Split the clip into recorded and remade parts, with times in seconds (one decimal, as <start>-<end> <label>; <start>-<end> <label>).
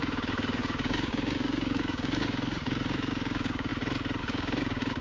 0.0-3.7 remade; 3.7-4.2 recorded; 4.2-5.0 remade